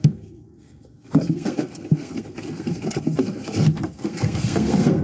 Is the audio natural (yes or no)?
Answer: no